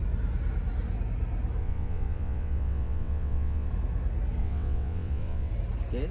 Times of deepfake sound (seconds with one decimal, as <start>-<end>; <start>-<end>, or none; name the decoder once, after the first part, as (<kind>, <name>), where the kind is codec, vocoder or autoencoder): 1.6-3.7 (vocoder, WaveNeXt); 4.4-5.5